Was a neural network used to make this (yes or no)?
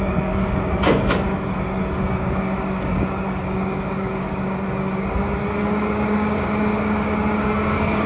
yes